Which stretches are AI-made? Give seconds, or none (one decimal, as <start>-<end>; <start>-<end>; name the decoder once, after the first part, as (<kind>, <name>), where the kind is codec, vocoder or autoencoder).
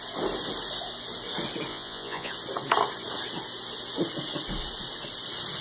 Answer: 1.7-2.3 (vocoder, Vocos)